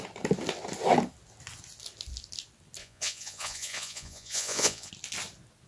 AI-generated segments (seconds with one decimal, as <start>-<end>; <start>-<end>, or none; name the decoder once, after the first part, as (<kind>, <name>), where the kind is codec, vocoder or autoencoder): 2.8-4.9 (vocoder, Vocos)